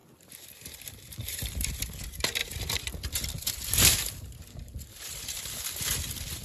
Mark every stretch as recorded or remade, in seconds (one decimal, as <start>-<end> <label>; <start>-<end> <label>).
0.0-2.0 remade; 2.0-2.4 recorded; 2.4-6.4 remade